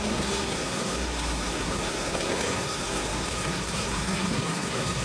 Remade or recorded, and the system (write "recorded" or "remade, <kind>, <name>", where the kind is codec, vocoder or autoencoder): remade, codec, SNAC